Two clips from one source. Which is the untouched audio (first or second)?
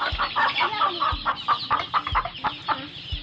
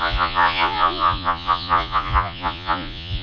first